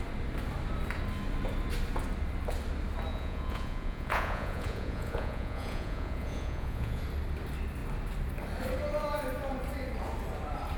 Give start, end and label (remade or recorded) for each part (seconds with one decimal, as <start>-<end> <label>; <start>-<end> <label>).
0.0-3.1 recorded; 3.1-7.0 remade; 7.0-10.8 recorded

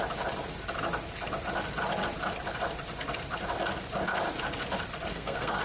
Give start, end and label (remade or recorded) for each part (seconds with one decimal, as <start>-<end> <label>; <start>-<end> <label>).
0.0-5.1 recorded; 5.1-5.6 remade

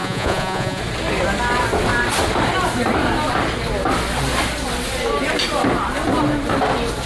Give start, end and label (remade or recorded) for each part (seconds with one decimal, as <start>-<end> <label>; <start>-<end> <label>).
0.0-0.8 remade; 0.8-7.1 recorded

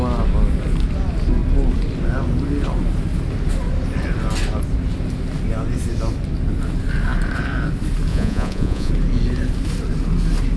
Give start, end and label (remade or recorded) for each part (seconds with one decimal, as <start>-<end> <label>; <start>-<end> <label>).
0.0-8.1 recorded; 8.1-8.9 remade; 8.9-10.6 recorded

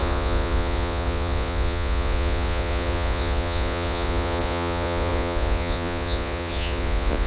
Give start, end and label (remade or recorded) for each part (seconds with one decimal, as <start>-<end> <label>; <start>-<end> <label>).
0.0-7.3 remade

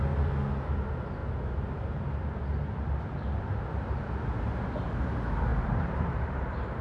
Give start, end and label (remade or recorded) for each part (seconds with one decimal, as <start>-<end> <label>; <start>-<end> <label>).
0.0-5.5 recorded; 5.5-6.8 remade

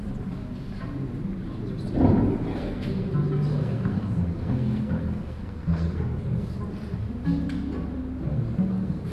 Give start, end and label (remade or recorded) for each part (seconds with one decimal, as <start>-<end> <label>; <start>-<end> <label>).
0.0-2.5 recorded; 2.5-3.1 remade; 3.1-3.5 recorded; 3.5-6.6 remade; 6.6-8.3 recorded; 8.3-9.1 remade